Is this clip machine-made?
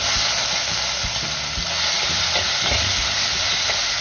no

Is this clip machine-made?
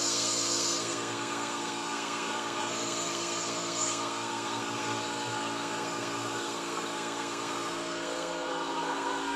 yes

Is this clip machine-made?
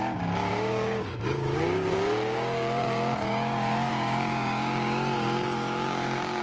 yes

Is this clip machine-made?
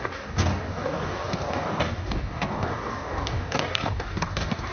yes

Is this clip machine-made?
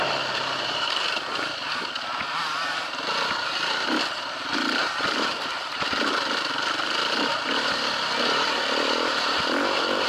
no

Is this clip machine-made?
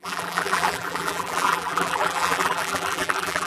yes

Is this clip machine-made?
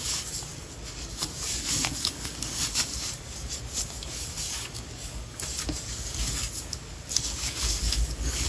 yes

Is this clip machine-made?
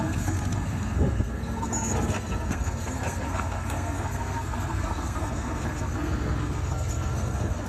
yes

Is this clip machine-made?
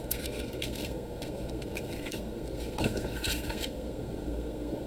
yes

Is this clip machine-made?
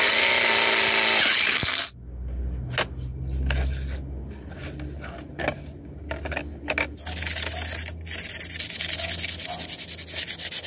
no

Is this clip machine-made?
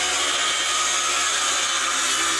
no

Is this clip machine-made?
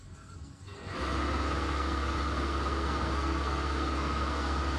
yes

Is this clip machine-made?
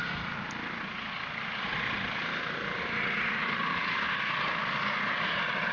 no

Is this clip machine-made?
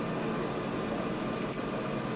no